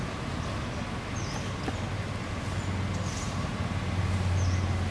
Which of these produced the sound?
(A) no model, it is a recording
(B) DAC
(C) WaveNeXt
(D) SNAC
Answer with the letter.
A